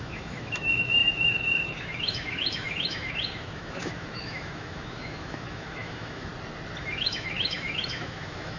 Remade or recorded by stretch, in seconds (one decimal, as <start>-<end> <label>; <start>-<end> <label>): 0.0-6.3 remade; 6.3-6.8 recorded; 6.8-8.6 remade